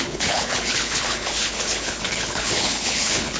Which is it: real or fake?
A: fake